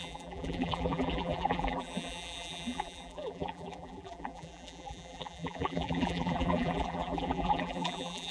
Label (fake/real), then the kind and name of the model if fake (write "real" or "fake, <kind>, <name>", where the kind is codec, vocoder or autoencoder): fake, vocoder, BigVGAN v2